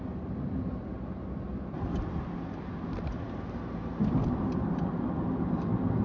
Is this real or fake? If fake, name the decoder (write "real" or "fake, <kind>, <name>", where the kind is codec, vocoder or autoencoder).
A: real